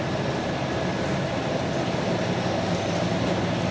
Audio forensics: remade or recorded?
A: recorded